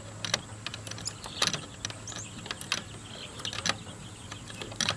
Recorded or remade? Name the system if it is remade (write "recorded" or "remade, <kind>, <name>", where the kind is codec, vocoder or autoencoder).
recorded